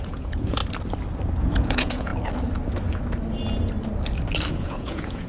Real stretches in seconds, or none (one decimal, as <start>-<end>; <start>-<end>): 0.6-1.4; 2.1-4.5